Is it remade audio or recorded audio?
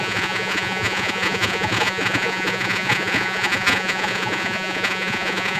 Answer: remade